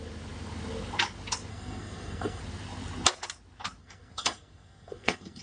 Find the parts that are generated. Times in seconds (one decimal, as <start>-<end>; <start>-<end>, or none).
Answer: 1.5-2.4; 3.8-5.4